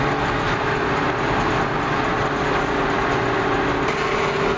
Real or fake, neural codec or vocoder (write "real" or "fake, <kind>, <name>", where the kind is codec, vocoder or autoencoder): real